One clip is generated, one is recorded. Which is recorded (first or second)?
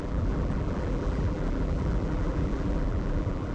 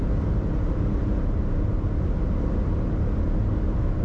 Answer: second